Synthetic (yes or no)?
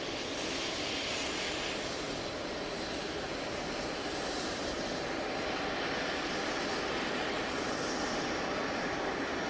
no